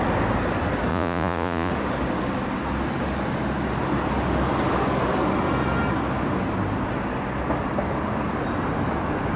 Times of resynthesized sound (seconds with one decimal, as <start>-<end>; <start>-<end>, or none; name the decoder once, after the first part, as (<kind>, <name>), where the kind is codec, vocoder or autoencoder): 0.9-1.7 (vocoder, Vocos)

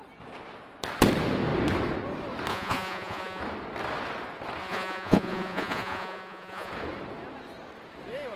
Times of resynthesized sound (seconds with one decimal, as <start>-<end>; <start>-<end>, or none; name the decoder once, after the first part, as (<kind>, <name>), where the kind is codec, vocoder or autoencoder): 2.5-3.4 (vocoder, Vocos); 4.6-6.7

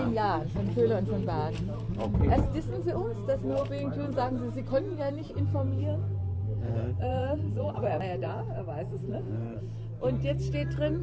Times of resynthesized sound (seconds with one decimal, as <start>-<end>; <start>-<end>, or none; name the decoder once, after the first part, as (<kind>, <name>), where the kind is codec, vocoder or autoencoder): 6.2-9.6 (vocoder, Vocos)

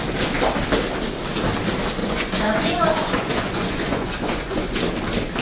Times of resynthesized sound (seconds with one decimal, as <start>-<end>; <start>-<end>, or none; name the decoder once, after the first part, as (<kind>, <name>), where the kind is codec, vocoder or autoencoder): 2.0-4.8 (vocoder, Vocos)